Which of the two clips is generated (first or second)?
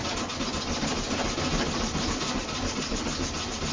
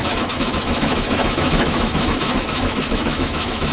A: second